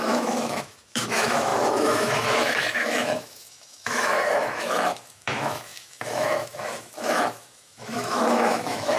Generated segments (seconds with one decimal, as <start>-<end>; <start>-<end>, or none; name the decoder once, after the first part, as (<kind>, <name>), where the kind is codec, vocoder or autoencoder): 0.0-9.0 (autoencoder, DAC-VAE)